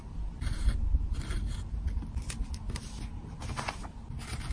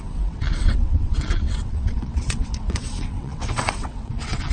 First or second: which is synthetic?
second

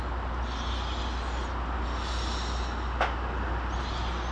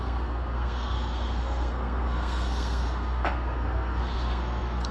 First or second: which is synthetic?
second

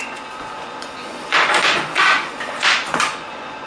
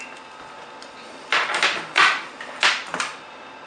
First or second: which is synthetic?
first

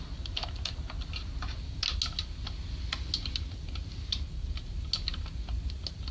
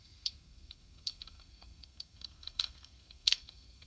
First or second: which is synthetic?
second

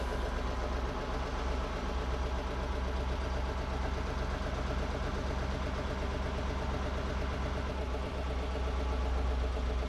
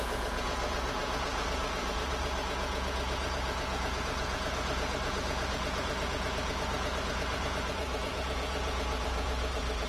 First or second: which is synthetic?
second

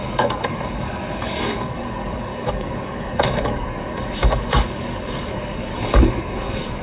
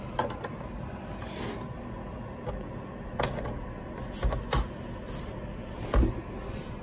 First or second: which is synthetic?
first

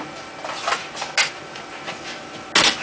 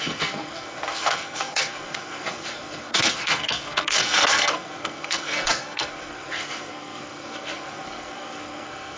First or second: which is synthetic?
second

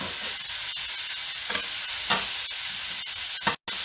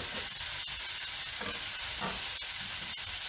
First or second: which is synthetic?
second